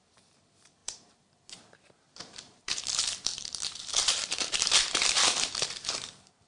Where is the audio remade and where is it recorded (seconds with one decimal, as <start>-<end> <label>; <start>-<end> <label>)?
0.0-6.5 remade

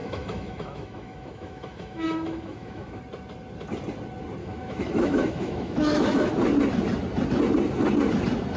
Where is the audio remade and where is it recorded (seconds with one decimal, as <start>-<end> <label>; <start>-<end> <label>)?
0.0-3.0 remade; 3.0-4.4 recorded; 4.4-6.3 remade; 6.3-8.6 recorded

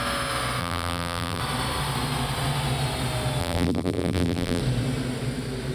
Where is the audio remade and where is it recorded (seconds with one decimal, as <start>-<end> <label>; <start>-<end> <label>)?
0.0-0.6 recorded; 0.6-1.4 remade; 1.4-3.4 recorded; 3.4-4.6 remade; 4.6-5.7 recorded

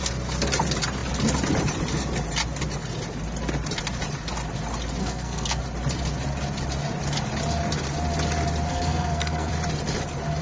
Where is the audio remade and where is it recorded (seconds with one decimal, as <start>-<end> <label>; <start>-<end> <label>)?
0.0-5.0 recorded; 5.0-5.6 remade; 5.6-8.7 recorded; 8.7-9.5 remade; 9.5-10.4 recorded

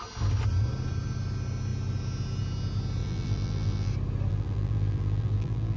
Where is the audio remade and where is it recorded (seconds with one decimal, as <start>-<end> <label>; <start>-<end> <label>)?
0.0-3.0 recorded; 3.0-3.9 remade; 3.9-4.3 recorded; 4.3-5.8 remade

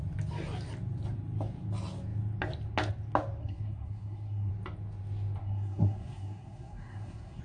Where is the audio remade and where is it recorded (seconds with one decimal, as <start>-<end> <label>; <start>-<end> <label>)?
0.0-3.4 recorded; 3.4-4.5 remade; 4.5-5.4 recorded; 5.4-7.4 remade

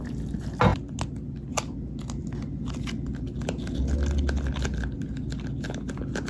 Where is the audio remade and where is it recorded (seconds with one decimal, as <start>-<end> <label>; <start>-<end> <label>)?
0.0-6.3 recorded